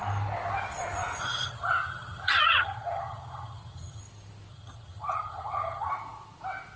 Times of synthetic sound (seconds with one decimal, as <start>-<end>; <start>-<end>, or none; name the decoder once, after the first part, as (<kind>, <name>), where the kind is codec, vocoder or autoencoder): 1.2-4.0 (vocoder, HiFi-GAN); 4.5-5.9

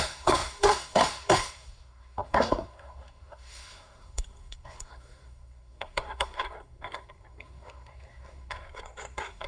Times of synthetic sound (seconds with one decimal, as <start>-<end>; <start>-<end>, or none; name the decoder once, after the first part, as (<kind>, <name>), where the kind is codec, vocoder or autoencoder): 0.0-9.5 (codec, SNAC)

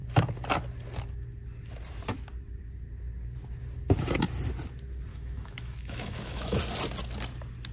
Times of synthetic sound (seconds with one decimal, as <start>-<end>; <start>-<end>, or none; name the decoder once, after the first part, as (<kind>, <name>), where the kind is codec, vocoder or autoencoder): 5.1-6.6 (autoencoder, DAC-VAE)

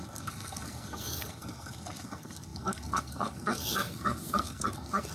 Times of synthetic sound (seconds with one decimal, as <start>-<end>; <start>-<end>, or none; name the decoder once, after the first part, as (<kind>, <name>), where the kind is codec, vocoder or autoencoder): 0.0-5.1 (codec, SNAC)

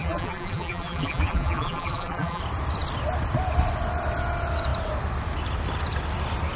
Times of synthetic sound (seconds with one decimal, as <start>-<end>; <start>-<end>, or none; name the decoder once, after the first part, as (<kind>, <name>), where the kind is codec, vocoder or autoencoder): 0.0-2.4 (vocoder, BigVGAN v2)

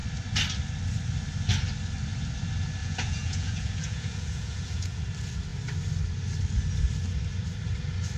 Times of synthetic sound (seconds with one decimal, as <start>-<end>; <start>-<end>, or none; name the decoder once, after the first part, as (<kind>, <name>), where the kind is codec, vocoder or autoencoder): 2.8-5.0 (vocoder, Vocos)

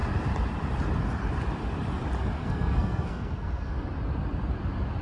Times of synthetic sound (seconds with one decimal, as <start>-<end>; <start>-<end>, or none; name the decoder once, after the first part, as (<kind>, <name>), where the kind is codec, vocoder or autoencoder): 2.4-3.7 (codec, SNAC)

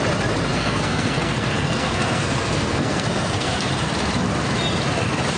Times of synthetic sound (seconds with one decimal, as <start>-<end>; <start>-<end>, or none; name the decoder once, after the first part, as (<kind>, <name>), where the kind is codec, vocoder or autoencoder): 0.5-3.7 (codec, SNAC)